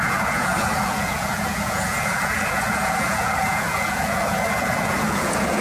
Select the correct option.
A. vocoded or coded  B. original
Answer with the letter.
A